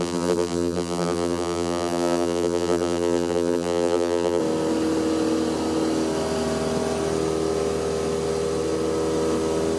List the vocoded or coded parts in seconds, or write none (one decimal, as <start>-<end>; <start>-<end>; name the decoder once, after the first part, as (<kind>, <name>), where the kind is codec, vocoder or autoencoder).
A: 0.0-4.4 (vocoder, BigVGAN v2)